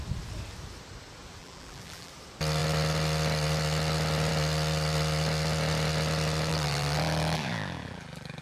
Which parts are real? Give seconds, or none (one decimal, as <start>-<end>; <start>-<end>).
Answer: 0.0-1.4; 2.1-6.5